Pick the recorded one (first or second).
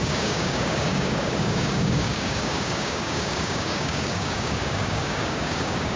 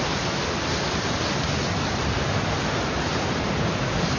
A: second